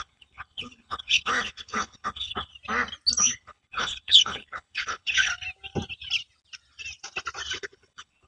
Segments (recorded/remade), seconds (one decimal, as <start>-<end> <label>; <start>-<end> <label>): 0.0-2.5 remade; 2.5-3.2 recorded; 3.2-5.3 remade; 5.3-7.5 recorded; 7.5-8.3 remade